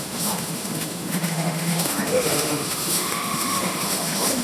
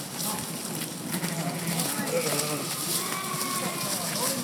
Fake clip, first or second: first